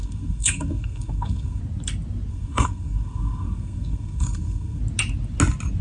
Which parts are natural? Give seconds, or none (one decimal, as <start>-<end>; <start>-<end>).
1.6-2.3; 4.8-5.8